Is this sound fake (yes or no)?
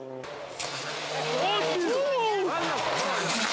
no